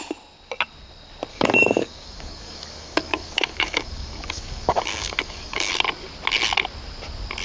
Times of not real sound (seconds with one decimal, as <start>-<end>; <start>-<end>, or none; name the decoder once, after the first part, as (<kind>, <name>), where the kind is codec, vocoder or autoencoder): 1.3-5.7 (codec, DAC)